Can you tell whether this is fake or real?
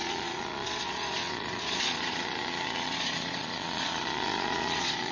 fake